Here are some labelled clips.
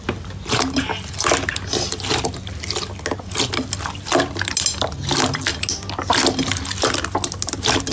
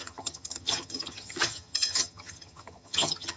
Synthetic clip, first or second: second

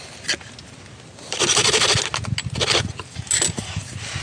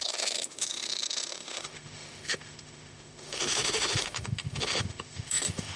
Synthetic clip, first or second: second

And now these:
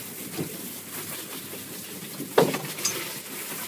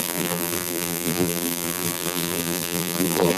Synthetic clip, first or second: second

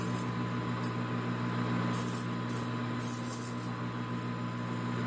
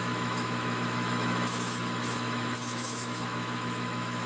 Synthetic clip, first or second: second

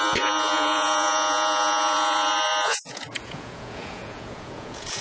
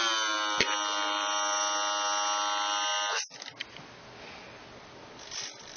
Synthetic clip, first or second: first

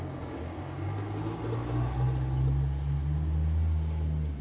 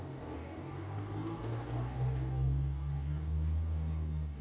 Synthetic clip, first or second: second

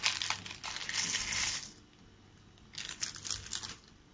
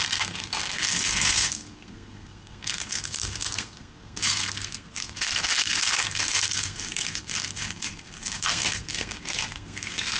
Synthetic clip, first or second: second